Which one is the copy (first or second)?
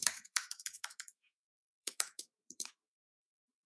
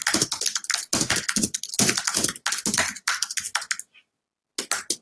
first